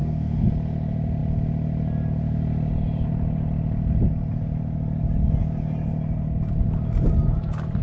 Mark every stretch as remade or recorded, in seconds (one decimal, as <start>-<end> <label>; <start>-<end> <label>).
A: 0.0-0.5 remade; 0.5-7.8 recorded